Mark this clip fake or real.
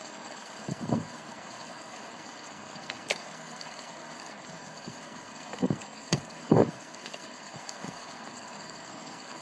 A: fake